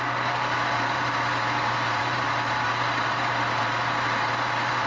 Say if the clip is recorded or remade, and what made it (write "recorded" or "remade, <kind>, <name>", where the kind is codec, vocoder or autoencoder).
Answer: remade, vocoder, BigVGAN v2